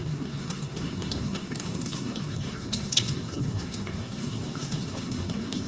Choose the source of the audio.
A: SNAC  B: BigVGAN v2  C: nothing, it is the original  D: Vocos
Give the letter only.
A